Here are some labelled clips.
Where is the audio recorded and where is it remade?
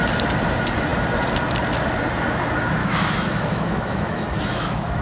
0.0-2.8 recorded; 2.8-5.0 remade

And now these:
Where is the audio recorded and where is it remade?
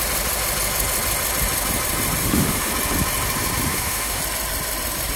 0.0-2.2 recorded; 2.2-2.7 remade; 2.7-3.7 recorded; 3.7-4.2 remade; 4.2-5.2 recorded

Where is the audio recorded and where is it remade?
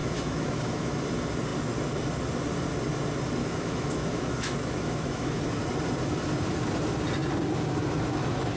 0.0-0.9 remade; 0.9-3.4 recorded; 3.4-5.4 remade; 5.4-8.6 recorded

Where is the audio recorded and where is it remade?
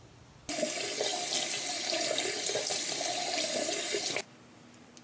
0.0-5.0 recorded